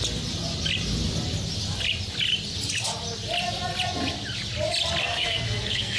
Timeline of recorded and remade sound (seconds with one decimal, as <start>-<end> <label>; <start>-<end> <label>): 0.0-5.0 recorded; 5.0-6.0 remade